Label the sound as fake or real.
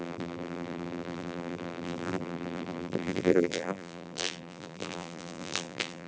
fake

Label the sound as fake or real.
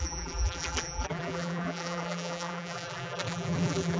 fake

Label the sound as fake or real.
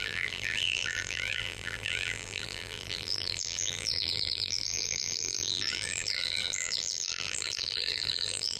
fake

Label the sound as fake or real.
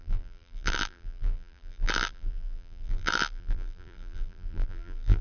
fake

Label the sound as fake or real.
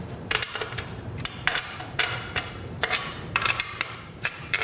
fake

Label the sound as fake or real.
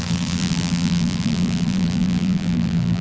fake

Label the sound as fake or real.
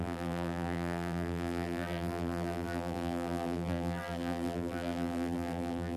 fake